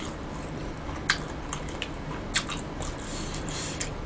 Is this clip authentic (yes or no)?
yes